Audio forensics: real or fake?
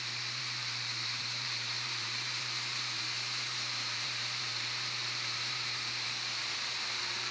fake